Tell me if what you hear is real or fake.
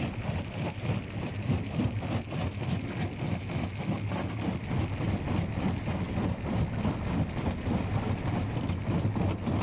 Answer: real